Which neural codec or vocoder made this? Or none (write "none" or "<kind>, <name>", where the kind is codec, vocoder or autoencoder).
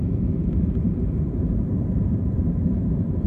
vocoder, BigVGAN v2